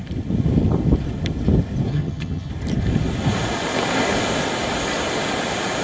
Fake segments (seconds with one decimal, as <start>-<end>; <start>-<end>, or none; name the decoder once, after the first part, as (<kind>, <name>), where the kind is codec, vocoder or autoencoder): 1.9-2.5 (vocoder, HiFi-GAN)

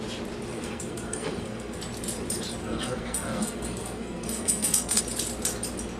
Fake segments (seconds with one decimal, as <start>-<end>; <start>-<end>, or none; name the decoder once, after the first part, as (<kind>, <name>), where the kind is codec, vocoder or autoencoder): 0.5-1.8 (codec, SNAC); 2.6-5.0

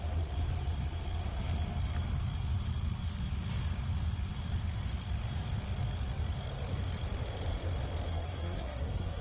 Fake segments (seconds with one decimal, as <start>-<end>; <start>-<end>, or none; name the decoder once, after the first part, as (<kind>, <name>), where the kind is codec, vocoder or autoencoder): 8.1-9.2 (codec, SNAC)

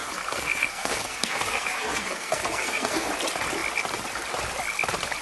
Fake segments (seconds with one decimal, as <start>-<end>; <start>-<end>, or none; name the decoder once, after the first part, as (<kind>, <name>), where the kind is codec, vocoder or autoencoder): 0.0-3.1 (codec, SNAC)

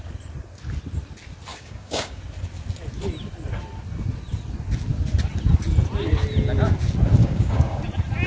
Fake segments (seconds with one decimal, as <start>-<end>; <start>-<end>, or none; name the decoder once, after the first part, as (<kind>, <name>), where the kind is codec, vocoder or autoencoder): 1.5-2.2 (codec, DAC); 7.2-7.8

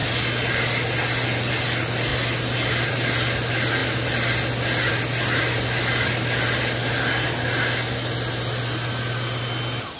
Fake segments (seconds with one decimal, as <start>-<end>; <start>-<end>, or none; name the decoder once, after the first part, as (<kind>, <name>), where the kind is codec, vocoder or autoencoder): none

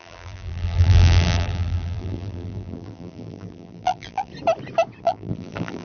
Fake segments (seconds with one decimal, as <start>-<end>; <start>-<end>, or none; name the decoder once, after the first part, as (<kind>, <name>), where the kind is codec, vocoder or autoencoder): 0.0-4.3 (vocoder, BigVGAN v2); 5.0-5.8